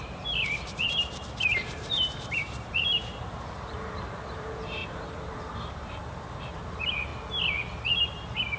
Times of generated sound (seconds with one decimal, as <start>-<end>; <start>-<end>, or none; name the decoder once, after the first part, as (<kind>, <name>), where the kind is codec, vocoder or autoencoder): 0.0-7.1 (vocoder, BigVGAN v2); 8.0-8.6